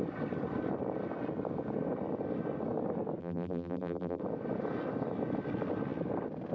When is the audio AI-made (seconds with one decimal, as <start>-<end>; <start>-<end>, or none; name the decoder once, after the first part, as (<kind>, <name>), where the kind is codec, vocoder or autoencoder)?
3.2-4.2 (vocoder, BigVGAN v2)